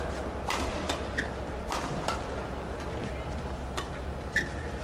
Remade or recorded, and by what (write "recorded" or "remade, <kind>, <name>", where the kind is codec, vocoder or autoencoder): recorded